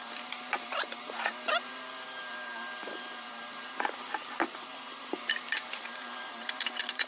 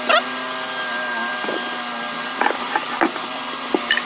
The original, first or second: second